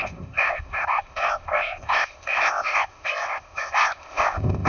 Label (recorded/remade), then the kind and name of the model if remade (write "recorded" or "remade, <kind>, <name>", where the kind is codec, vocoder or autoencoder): remade, codec, ZipCodec